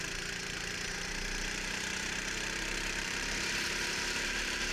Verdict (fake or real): fake